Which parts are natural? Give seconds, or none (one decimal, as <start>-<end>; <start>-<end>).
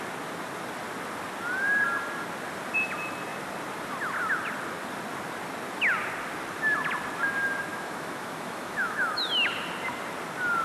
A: 0.0-7.7; 9.5-10.6